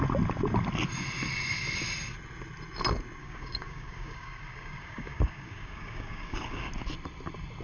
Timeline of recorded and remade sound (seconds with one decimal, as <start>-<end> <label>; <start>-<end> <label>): 0.0-3.2 recorded; 3.2-6.7 remade; 6.7-7.6 recorded